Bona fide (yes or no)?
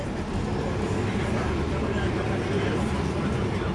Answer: no